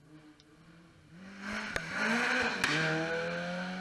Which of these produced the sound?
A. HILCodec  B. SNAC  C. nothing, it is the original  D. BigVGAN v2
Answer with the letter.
C